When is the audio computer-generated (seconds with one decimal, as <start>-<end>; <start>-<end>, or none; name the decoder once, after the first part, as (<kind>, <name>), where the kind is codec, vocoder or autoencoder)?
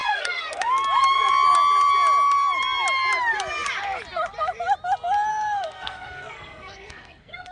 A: 0.0-0.7 (codec, SNAC); 5.3-7.5